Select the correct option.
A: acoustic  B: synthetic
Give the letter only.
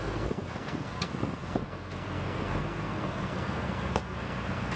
B